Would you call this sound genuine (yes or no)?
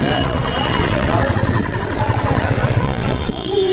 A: no